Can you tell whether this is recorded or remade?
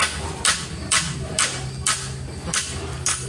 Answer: recorded